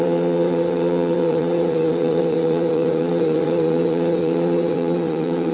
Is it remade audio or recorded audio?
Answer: remade